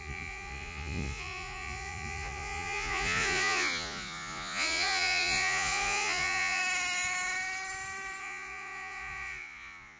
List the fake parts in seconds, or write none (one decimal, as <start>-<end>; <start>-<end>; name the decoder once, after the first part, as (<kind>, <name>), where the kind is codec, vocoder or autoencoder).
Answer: 0.0-6.6 (vocoder, Vocos); 8.2-10.0